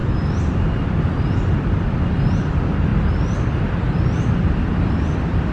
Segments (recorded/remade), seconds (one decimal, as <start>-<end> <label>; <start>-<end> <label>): 0.0-2.9 remade; 2.9-4.3 recorded; 4.3-5.5 remade